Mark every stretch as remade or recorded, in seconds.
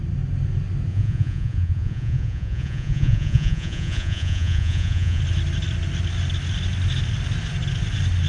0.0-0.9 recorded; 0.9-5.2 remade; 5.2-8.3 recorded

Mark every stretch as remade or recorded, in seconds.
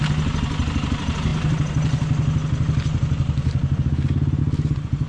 0.0-5.1 recorded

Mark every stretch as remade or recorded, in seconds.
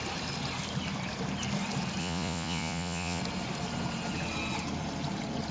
0.0-2.0 recorded; 2.0-3.2 remade; 3.2-5.5 recorded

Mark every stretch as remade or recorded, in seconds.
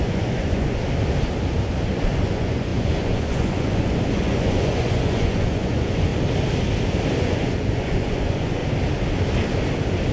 0.0-0.8 remade; 0.8-2.3 recorded; 2.3-6.1 remade; 6.1-7.2 recorded; 7.2-8.6 remade; 8.6-10.1 recorded